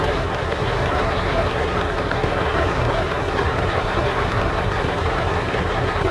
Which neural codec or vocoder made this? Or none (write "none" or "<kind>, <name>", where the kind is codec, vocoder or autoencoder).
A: codec, SNAC